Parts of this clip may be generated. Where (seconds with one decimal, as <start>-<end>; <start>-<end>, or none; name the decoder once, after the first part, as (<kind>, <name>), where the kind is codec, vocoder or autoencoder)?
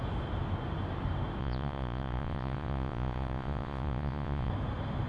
1.4-4.5 (vocoder, Vocos)